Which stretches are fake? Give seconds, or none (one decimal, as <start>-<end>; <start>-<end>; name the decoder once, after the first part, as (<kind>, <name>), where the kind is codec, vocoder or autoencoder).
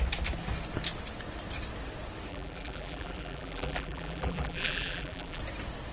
2.3-5.4 (vocoder, BigVGAN v2)